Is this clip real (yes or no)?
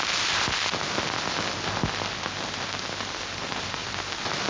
yes